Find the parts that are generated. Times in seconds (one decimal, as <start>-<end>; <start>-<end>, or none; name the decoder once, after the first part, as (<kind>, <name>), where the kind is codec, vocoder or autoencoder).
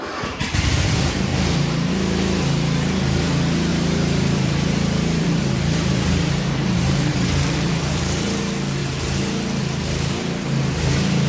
1.3-1.9 (vocoder, BigVGAN v2); 3.7-8.4